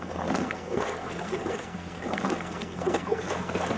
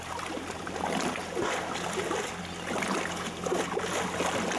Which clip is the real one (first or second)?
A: second